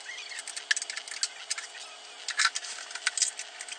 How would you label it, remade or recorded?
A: recorded